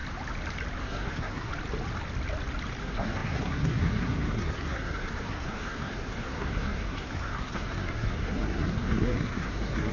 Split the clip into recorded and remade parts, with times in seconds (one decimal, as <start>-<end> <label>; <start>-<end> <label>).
0.0-0.8 recorded; 0.8-1.5 remade; 1.5-2.8 recorded; 2.8-9.9 remade